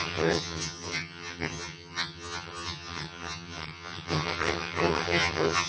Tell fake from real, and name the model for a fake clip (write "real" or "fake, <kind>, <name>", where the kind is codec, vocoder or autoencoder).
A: fake, vocoder, HiFi-GAN